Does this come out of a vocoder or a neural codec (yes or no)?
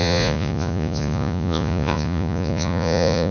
yes